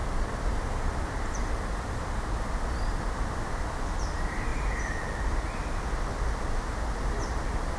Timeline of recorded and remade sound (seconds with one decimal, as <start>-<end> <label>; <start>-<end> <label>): 0.0-4.5 remade; 4.5-6.4 recorded; 6.4-7.8 remade